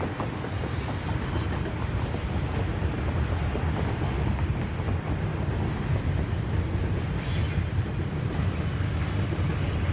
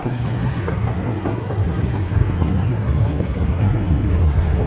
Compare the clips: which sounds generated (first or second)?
second